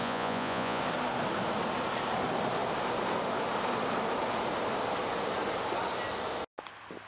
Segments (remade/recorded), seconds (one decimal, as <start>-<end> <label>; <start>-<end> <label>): 0.0-0.8 remade; 0.8-7.1 recorded